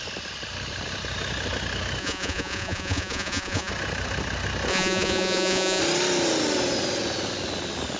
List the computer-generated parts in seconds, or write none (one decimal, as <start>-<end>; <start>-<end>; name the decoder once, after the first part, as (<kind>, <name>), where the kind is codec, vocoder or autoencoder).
2.0-3.7 (vocoder, Vocos); 4.7-5.8